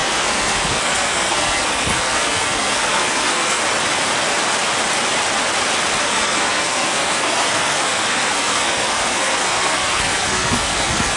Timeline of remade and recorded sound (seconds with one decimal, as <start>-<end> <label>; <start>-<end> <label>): 0.0-3.6 remade; 3.6-6.0 recorded; 6.0-11.2 remade